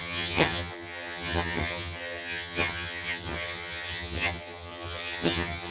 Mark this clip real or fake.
fake